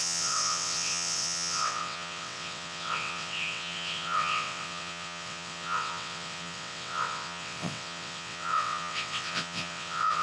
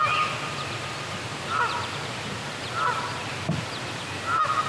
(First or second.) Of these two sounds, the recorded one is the second